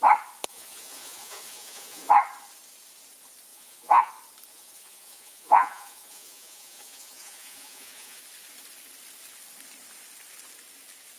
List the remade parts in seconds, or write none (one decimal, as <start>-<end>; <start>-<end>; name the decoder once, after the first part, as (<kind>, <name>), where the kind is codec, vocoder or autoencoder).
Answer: 0.5-2.1 (vocoder, Vocos); 3.5-4.1; 4.5-8.2